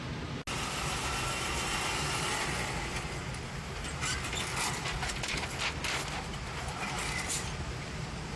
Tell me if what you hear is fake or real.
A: real